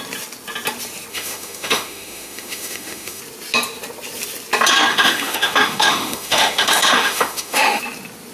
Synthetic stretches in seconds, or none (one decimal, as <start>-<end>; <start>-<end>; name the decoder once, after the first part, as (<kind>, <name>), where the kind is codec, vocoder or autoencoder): 1.1-3.2 (autoencoder, DAC-VAE); 4.9-7.8